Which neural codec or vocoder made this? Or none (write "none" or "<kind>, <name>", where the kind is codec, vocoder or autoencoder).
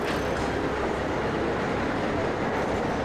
none